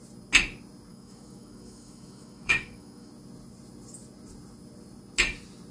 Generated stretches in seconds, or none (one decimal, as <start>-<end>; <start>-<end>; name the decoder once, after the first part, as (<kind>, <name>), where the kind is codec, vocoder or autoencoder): 0.9-3.1 (autoencoder, DAC-VAE)